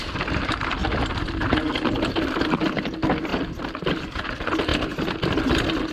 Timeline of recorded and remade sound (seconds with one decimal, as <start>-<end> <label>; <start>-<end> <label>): 0.0-0.8 recorded; 0.8-1.4 remade; 1.4-3.3 recorded; 3.3-3.9 remade; 3.9-5.9 recorded